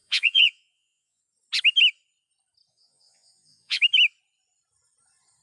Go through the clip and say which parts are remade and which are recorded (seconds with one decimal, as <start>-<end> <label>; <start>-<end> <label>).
0.0-1.2 remade; 1.2-2.7 recorded; 2.7-3.8 remade; 3.8-5.4 recorded